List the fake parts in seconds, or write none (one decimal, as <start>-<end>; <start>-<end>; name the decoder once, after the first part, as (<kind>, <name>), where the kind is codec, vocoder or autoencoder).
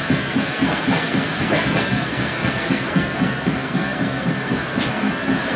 0.0-5.6 (codec, SNAC)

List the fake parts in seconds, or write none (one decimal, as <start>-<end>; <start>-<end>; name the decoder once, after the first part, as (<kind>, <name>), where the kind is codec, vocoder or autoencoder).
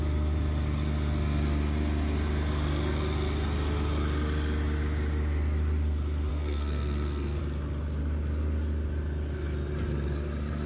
6.3-7.4 (codec, SNAC)